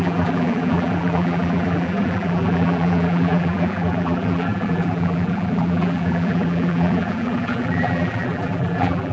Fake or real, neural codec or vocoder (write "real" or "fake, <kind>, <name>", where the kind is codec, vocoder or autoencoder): fake, vocoder, BigVGAN v2